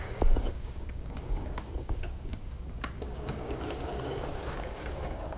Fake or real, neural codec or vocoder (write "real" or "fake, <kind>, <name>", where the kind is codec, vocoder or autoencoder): fake, codec, DAC